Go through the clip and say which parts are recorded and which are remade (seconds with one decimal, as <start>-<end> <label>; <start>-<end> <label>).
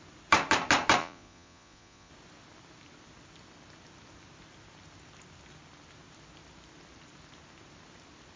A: 0.0-1.0 recorded; 1.0-2.1 remade; 2.1-8.4 recorded